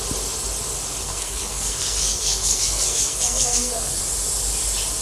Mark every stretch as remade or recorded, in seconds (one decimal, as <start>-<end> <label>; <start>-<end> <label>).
0.0-1.0 recorded; 1.0-4.0 remade; 4.0-5.0 recorded